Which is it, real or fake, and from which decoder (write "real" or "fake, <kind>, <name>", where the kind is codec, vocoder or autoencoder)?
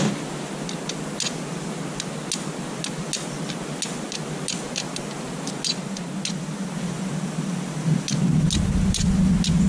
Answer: real